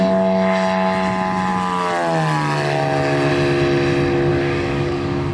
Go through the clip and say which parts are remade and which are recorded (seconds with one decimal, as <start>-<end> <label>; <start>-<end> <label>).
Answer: 0.0-4.3 recorded; 4.3-5.3 remade